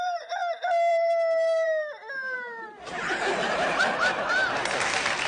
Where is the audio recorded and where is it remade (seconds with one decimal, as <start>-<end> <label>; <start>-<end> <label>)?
0.0-0.4 remade; 0.4-0.9 recorded; 0.9-5.3 remade

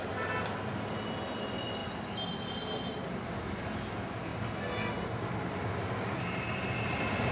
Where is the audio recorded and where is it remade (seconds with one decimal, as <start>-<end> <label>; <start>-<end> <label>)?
0.0-7.3 recorded

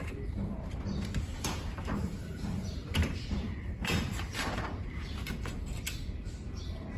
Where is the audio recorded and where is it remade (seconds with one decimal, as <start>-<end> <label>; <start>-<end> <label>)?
0.0-1.3 recorded; 1.3-5.5 remade; 5.5-7.0 recorded

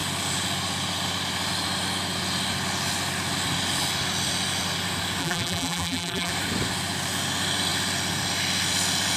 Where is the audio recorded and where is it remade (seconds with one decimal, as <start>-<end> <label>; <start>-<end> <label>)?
0.0-5.2 recorded; 5.2-6.3 remade; 6.3-9.2 recorded

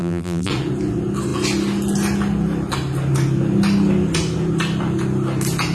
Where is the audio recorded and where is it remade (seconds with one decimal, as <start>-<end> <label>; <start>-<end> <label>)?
0.0-0.5 remade; 0.5-5.7 recorded

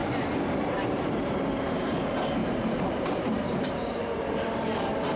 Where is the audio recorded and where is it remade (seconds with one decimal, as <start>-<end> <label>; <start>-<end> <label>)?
0.0-1.0 remade; 1.0-2.4 recorded; 2.4-4.3 remade; 4.3-5.2 recorded

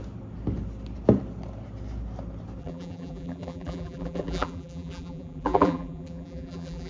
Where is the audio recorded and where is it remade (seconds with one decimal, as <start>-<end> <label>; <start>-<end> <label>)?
0.0-2.6 recorded; 2.6-6.9 remade

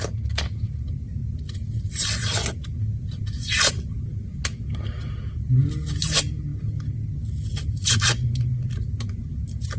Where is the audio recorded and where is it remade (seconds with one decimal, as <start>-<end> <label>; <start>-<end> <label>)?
0.0-1.2 recorded; 1.2-3.5 remade; 3.5-9.8 recorded